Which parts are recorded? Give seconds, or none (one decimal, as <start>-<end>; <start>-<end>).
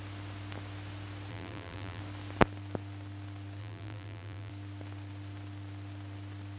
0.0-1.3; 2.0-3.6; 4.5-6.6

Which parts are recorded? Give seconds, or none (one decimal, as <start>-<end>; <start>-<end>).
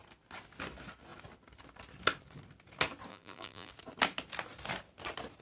0.0-3.1; 3.7-5.4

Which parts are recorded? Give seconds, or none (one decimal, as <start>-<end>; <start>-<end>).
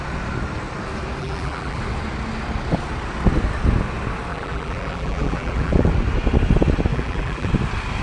0.0-1.2; 1.8-4.3; 5.9-6.9; 7.5-8.0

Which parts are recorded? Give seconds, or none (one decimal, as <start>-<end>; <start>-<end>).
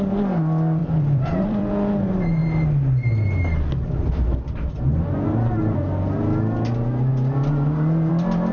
0.0-0.8; 1.7-8.5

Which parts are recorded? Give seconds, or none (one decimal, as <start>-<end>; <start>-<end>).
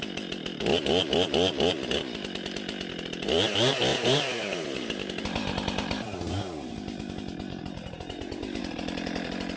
0.0-3.9; 8.6-9.6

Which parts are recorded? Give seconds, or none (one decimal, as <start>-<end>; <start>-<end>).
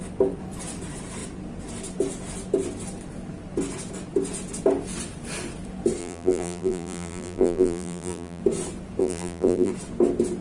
0.0-6.0; 8.4-9.0; 9.7-10.4